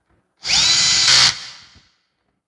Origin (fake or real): real